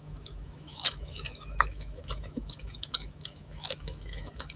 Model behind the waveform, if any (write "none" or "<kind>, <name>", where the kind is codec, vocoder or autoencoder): autoencoder, DAC-VAE